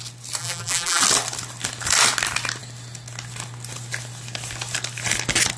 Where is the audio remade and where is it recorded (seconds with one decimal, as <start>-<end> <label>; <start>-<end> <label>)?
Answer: 0.0-0.4 recorded; 0.4-1.0 remade; 1.0-5.6 recorded